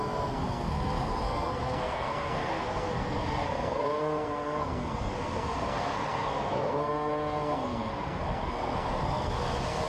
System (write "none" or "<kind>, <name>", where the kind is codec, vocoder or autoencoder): codec, SNAC